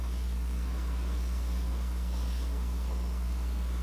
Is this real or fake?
fake